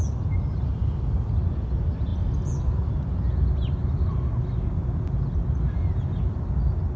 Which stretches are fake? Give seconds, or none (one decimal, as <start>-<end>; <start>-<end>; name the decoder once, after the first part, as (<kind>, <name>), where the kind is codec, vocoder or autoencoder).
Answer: none